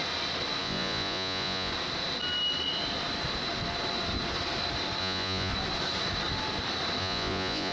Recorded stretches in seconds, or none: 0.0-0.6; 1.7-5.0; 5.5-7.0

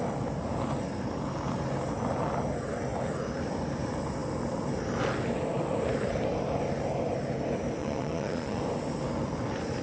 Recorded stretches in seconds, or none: 0.0-7.8; 8.6-9.8

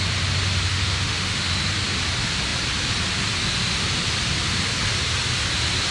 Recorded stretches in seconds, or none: 0.0-0.7; 1.5-5.9

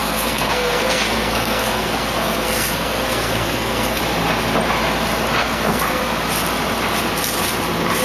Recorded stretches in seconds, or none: 4.0-5.4; 6.0-8.0